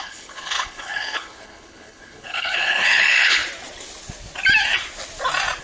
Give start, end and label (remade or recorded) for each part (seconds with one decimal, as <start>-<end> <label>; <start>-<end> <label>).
0.0-3.4 remade; 3.4-5.6 recorded